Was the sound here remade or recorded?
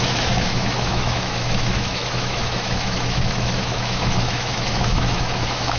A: remade